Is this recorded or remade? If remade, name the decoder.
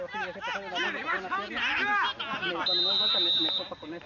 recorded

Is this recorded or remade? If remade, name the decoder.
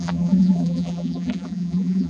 remade, vocoder, BigVGAN v2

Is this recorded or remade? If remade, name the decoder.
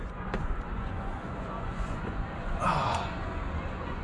remade, vocoder, Vocos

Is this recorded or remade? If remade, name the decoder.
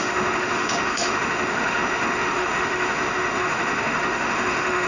remade, autoencoder, DAC-VAE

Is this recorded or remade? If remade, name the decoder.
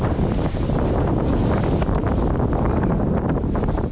recorded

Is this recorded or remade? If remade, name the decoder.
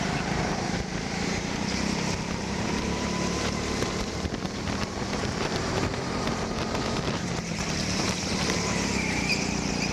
remade, vocoder, BigVGAN v2